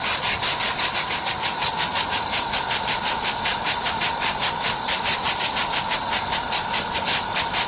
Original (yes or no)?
yes